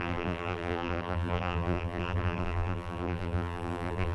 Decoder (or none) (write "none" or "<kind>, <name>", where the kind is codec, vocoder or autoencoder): vocoder, BigVGAN v2